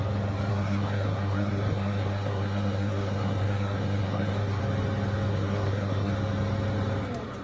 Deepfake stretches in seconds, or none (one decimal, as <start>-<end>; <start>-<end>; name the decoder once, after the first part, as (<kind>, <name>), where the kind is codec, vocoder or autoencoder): 0.5-4.6 (codec, SNAC); 5.3-6.1